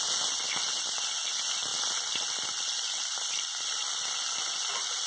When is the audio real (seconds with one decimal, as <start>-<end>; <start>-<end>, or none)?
0.0-5.1